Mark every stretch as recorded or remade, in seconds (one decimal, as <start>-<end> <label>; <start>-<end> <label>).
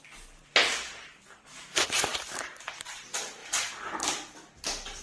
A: 0.0-2.1 recorded; 2.1-2.7 remade; 2.7-3.4 recorded; 3.4-4.6 remade; 4.6-5.0 recorded